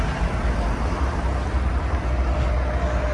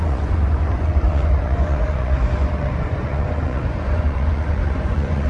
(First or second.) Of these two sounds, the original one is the first